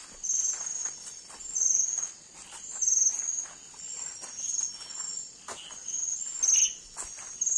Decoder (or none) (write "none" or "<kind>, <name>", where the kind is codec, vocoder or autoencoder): none